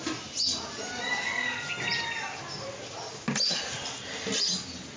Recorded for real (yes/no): yes